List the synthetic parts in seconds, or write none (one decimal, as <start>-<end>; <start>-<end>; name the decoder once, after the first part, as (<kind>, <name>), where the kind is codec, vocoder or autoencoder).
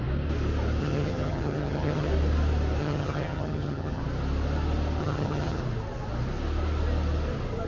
0.8-2.1 (vocoder, HiFi-GAN); 2.8-4.0; 5.0-5.6